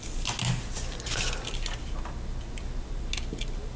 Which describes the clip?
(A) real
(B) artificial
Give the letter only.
A